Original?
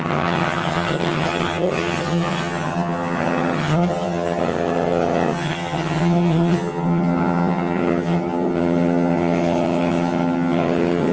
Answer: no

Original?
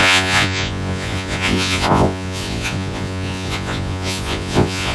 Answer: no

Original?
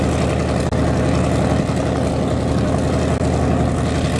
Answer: yes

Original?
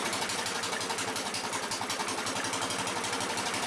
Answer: yes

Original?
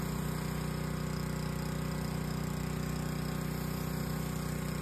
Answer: yes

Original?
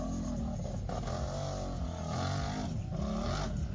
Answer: yes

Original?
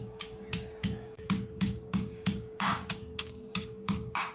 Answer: no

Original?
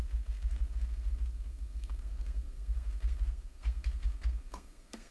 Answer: no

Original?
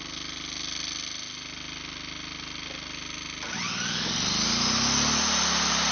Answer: yes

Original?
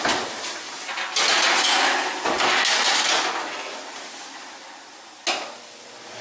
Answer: yes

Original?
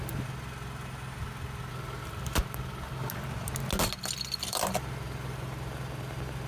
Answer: yes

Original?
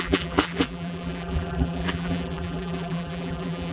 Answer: no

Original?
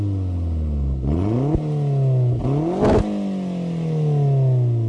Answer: yes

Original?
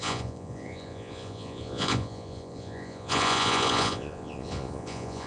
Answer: no